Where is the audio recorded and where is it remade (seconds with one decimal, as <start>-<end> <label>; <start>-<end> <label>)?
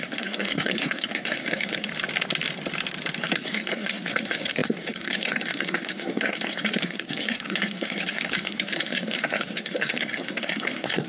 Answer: 0.0-1.9 remade; 1.9-3.2 recorded; 3.2-11.1 remade